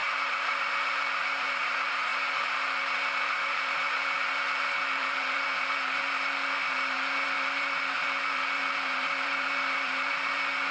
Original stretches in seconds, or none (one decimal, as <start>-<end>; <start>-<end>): none